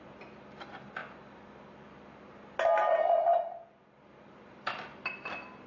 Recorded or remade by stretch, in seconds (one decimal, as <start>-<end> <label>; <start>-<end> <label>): 0.0-5.7 recorded